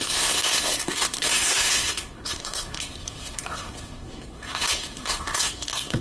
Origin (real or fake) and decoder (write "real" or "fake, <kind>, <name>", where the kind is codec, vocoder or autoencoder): fake, codec, SNAC